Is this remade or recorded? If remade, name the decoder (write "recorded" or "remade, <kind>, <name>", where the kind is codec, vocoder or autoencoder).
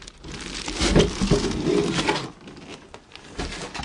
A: recorded